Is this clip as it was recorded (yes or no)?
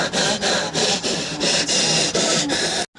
yes